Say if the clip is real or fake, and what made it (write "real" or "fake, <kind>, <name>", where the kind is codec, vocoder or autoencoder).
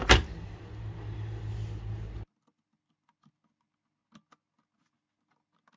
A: real